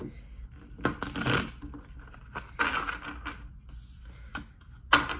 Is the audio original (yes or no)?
yes